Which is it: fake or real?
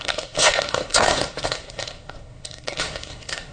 fake